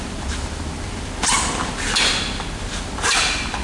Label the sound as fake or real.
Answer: real